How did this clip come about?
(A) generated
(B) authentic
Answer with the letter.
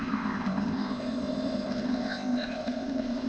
A